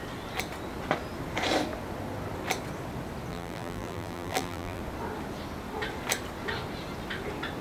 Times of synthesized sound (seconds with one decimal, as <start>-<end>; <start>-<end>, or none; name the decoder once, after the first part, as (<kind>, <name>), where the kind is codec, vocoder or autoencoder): 3.3-4.8 (vocoder, BigVGAN v2)